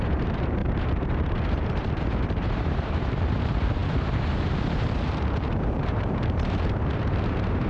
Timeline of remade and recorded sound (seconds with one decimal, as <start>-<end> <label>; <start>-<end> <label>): 0.0-7.7 remade